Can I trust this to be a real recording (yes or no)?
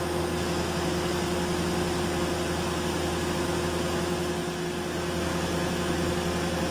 yes